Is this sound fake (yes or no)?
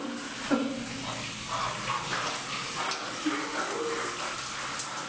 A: no